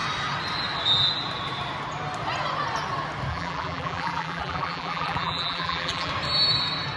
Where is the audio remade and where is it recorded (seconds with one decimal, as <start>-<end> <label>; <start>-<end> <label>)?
0.0-3.3 recorded; 3.3-6.1 remade; 6.1-7.0 recorded